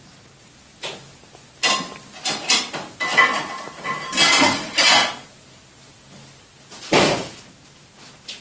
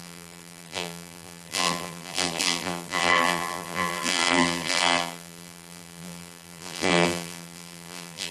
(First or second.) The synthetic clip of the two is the second